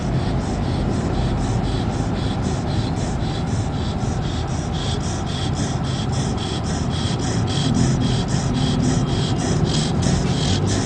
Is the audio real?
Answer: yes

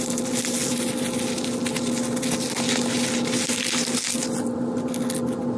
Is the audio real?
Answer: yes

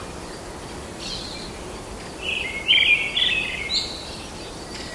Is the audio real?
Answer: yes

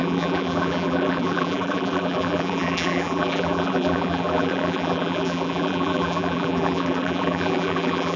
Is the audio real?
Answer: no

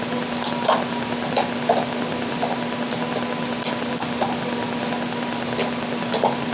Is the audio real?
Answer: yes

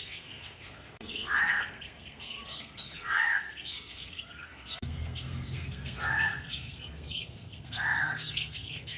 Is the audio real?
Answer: no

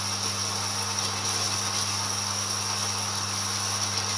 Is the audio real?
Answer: yes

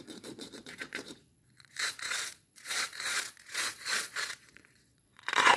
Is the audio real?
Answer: no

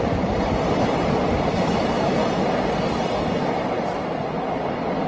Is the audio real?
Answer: yes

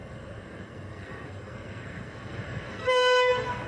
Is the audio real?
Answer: no